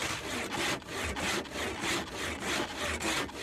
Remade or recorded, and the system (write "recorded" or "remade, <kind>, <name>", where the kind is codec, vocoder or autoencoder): recorded